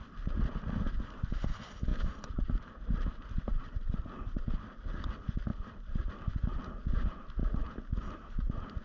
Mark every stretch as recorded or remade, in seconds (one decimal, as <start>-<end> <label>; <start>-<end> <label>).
0.0-1.9 recorded; 1.9-4.0 remade; 4.0-8.8 recorded